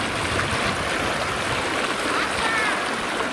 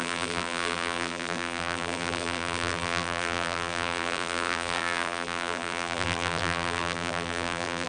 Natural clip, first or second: first